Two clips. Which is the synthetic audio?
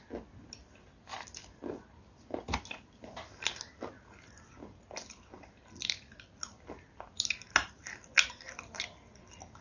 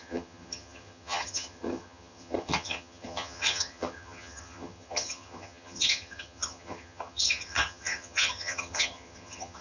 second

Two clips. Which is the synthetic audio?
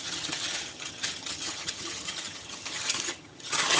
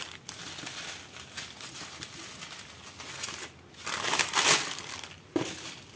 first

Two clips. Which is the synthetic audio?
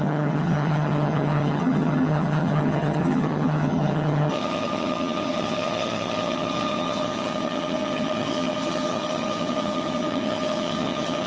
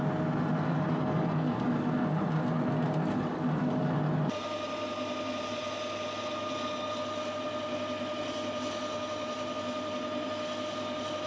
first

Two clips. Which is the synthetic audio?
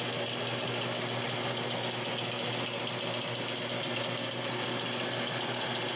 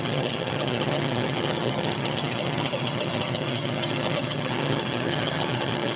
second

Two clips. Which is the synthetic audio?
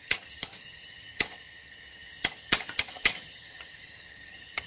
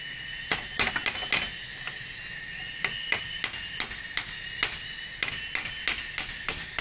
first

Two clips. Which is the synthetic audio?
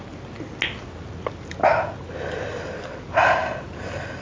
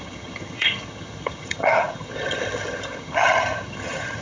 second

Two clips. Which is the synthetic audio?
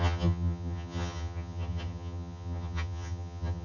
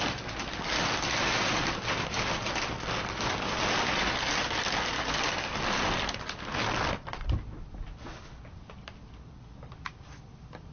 first